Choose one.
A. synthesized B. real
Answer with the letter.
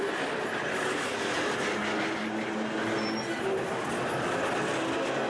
B